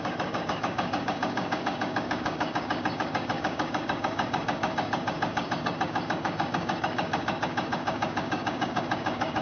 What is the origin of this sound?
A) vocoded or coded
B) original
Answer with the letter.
A